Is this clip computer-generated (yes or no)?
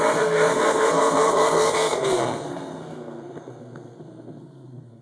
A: yes